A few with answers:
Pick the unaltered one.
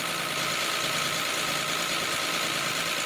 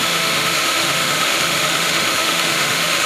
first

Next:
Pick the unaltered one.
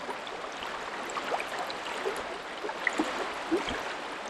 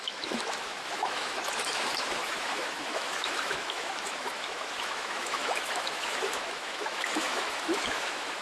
first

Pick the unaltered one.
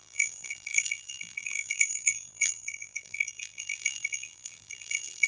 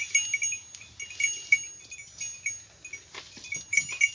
second